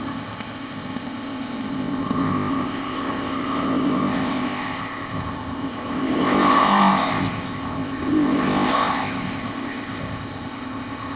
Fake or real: fake